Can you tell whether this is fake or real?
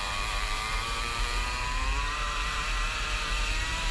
fake